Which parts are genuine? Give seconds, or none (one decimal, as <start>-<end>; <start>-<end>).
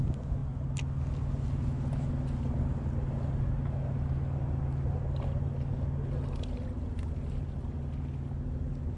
0.0-9.0